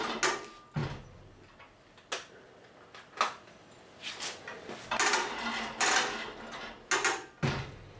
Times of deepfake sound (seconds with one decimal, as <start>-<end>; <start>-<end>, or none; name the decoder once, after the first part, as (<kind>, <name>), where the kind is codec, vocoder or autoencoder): none